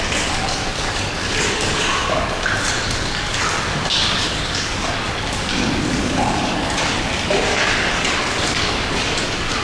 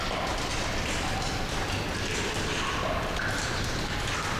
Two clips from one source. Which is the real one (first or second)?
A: second